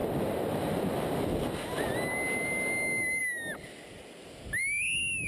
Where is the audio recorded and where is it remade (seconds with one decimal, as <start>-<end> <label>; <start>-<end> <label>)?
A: 0.0-5.3 recorded